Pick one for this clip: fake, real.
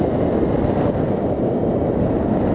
real